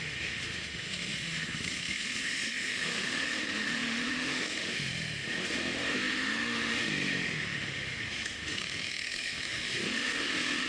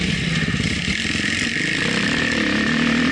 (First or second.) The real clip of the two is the second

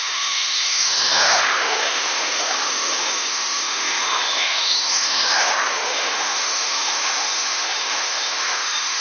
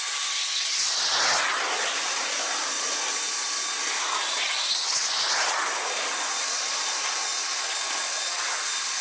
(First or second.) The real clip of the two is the second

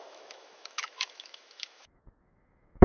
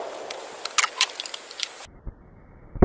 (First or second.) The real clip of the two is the second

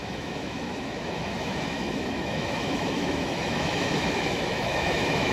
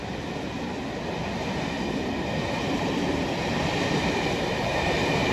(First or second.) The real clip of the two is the second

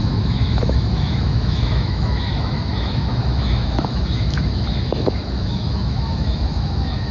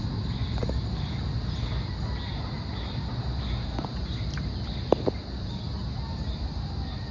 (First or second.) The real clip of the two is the second